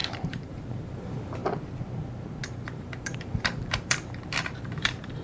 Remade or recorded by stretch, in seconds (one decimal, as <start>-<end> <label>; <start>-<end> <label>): 0.0-1.4 remade; 1.4-2.5 recorded; 2.5-5.2 remade